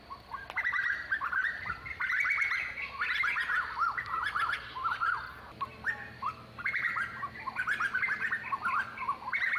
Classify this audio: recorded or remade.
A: recorded